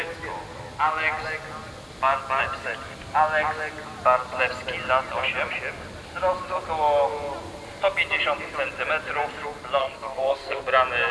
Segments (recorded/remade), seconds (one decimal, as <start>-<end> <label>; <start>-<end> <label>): 0.0-9.8 recorded; 9.8-10.6 remade; 10.6-11.1 recorded